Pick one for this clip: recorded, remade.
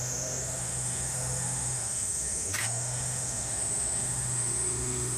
remade